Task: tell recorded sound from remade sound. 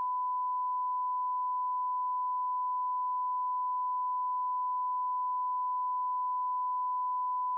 recorded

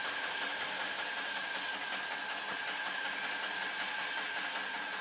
recorded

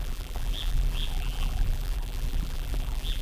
remade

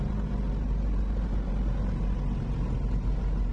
recorded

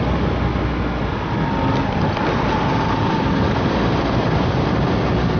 recorded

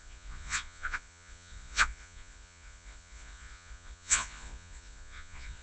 remade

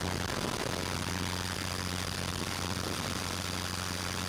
recorded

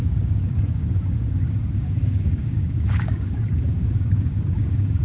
remade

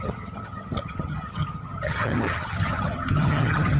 remade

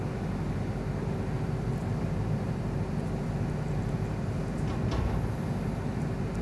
recorded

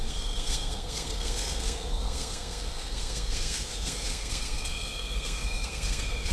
remade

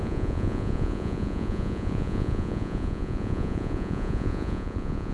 remade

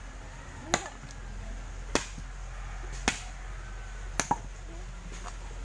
recorded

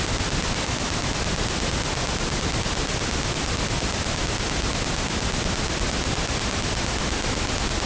recorded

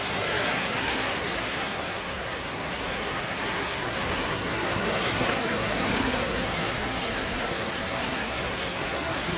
remade